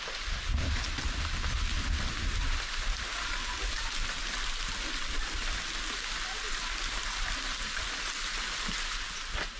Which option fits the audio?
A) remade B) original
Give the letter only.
B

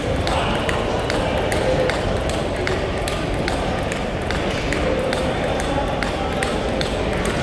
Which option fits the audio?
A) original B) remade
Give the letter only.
B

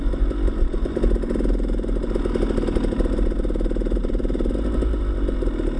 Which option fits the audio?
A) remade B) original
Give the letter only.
B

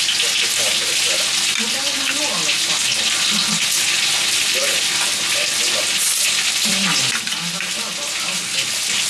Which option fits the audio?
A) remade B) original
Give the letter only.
B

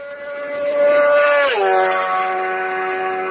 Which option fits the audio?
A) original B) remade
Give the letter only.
A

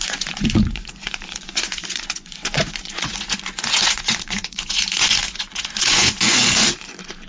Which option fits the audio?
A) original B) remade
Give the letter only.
B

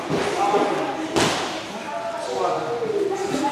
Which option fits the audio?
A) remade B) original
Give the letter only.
B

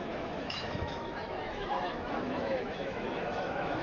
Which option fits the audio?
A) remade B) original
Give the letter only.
A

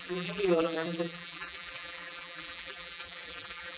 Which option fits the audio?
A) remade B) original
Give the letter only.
A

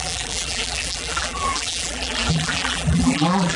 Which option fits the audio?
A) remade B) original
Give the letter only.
A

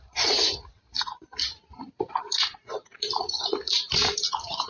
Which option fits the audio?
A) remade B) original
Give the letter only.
A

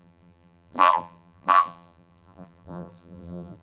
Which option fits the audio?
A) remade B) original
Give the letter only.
A